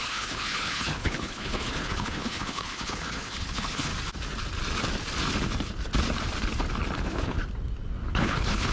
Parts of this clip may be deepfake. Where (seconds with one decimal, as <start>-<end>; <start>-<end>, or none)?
0.0-3.9; 7.0-7.4; 8.1-8.7